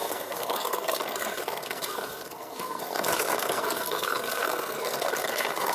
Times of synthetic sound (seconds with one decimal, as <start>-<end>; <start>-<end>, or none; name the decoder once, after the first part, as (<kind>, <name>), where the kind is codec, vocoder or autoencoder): 0.0-5.7 (codec, SNAC)